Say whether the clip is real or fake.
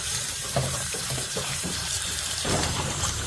fake